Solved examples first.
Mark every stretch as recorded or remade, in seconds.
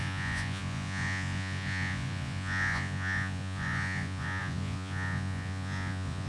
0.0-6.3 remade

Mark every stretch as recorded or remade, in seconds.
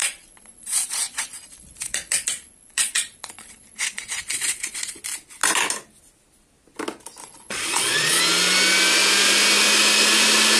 0.0-5.0 remade; 5.0-7.2 recorded; 7.2-8.2 remade; 8.2-10.6 recorded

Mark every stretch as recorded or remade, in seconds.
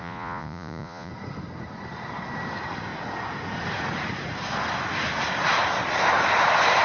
0.0-1.1 remade; 1.1-6.8 recorded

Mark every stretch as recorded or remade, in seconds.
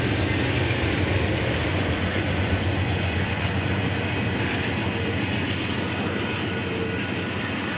0.0-1.7 recorded; 1.7-3.9 remade; 3.9-7.8 recorded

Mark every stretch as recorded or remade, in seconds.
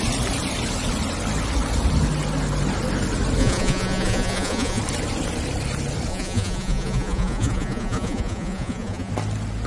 0.0-3.4 recorded; 3.4-4.8 remade; 4.8-6.1 recorded; 6.1-9.1 remade; 9.1-9.7 recorded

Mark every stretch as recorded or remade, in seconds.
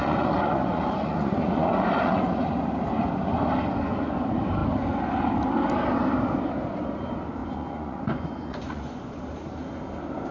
0.0-2.2 remade; 2.2-7.4 recorded; 7.4-9.2 remade; 9.2-10.3 recorded